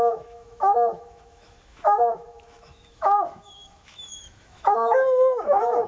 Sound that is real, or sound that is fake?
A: fake